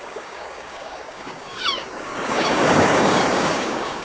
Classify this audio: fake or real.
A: fake